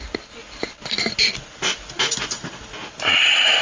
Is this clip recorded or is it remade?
recorded